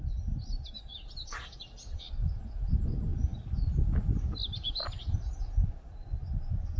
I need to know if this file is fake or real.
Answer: real